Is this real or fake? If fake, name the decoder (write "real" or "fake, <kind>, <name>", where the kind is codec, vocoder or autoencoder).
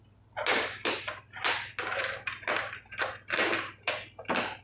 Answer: real